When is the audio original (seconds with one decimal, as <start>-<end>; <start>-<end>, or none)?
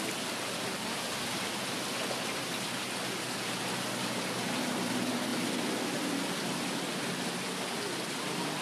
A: 0.0-8.6